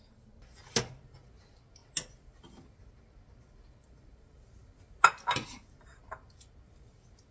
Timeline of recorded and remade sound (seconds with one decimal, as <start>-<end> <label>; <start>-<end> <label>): 0.0-7.3 recorded